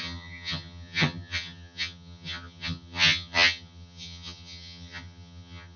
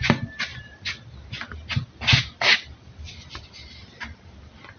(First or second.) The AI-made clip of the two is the first